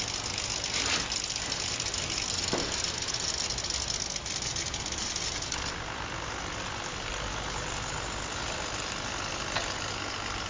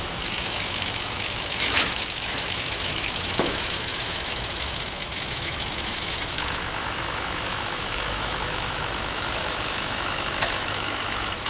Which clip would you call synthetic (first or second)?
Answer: second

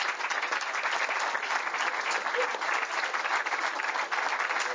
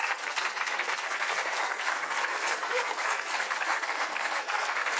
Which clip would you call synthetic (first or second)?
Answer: second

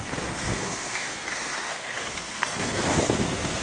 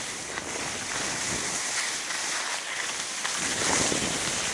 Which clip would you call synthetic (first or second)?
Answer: first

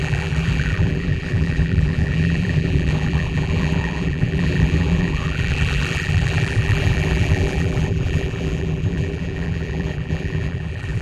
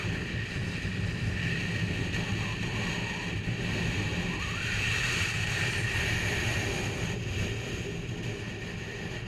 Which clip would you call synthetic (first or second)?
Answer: first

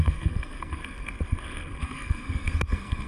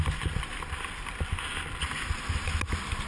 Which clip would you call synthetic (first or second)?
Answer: first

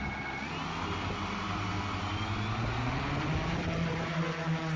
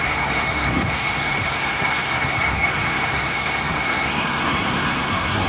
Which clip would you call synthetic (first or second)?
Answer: second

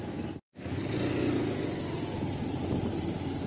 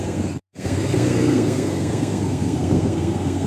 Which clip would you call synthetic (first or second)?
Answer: second